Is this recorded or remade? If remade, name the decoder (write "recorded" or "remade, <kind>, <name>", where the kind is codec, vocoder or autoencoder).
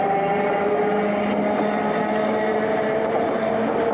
recorded